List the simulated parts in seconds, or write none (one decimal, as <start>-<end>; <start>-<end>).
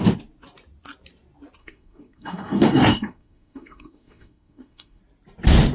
1.6-5.0